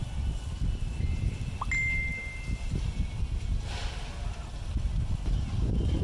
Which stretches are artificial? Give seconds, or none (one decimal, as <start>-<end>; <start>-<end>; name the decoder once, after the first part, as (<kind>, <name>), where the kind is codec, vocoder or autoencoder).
none